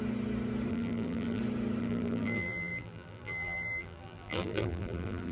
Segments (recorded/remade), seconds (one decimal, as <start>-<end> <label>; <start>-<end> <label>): 0.0-0.7 recorded; 0.7-1.4 remade; 1.4-1.8 recorded; 1.8-5.3 remade